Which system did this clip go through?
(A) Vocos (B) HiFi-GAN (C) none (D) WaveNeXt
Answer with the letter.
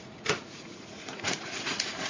A